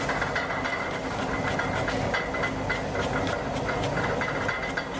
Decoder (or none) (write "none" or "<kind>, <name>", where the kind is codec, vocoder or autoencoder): none